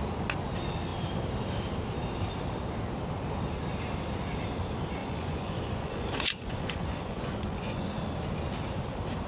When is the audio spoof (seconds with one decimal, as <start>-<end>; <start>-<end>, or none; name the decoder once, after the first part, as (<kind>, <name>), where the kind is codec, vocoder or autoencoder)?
5.0-7.9 (vocoder, Vocos)